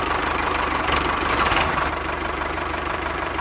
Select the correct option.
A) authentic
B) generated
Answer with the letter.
B